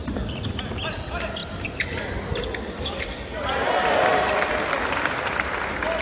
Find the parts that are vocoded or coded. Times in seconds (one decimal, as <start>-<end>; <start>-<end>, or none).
none